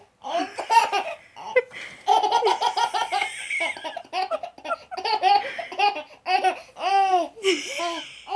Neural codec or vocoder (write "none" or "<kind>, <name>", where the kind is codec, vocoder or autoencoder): none